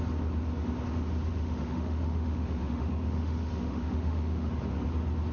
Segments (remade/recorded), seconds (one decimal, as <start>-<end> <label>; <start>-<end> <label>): 0.0-1.3 recorded; 1.3-4.5 remade; 4.5-5.3 recorded